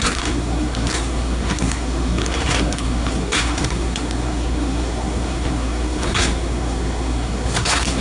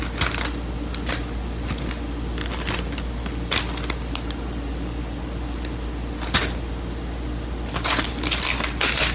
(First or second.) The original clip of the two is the second